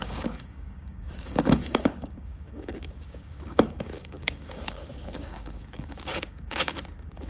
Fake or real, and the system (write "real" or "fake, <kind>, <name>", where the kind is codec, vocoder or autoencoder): fake, codec, DAC